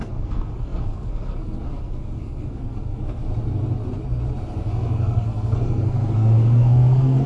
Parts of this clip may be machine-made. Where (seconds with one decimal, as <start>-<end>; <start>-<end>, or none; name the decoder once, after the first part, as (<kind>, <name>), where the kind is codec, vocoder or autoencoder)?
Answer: 0.0-3.2 (codec, SNAC); 4.7-7.3